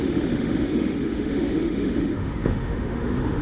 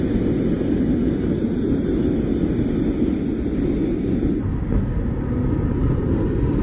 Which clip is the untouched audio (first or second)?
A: second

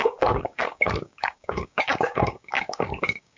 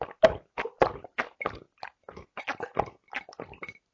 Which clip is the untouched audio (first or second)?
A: second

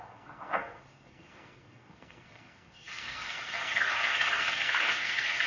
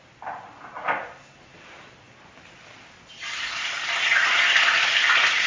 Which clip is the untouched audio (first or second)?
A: second